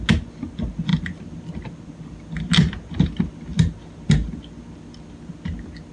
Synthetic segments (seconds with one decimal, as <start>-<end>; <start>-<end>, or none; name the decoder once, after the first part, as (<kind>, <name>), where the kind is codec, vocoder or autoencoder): none